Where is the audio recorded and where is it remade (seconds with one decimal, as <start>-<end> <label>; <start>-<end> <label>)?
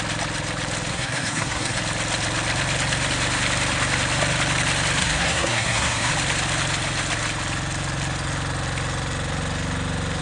0.0-0.9 recorded; 0.9-1.8 remade; 1.8-5.0 recorded; 5.0-6.1 remade; 6.1-10.2 recorded